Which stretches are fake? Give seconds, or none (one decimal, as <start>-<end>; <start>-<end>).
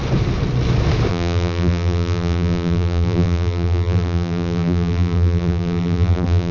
1.1-6.5